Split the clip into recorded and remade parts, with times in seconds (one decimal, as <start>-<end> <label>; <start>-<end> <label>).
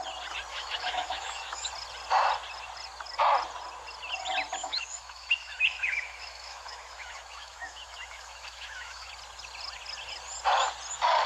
0.0-0.5 recorded; 0.5-1.7 remade; 1.7-4.6 recorded; 4.6-9.1 remade; 9.1-11.3 recorded